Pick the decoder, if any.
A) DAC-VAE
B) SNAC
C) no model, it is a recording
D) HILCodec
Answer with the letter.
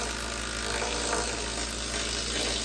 C